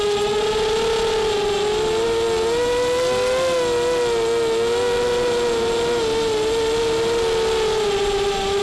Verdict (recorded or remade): recorded